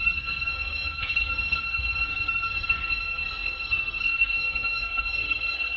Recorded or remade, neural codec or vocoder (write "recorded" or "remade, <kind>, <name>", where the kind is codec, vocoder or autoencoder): remade, codec, SNAC